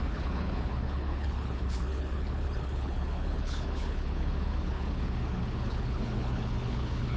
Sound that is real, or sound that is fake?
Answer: fake